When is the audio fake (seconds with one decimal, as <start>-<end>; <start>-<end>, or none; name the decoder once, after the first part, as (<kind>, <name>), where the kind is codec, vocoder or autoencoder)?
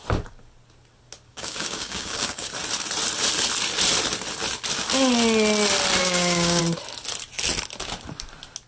1.3-2.5 (codec, DAC); 6.0-6.6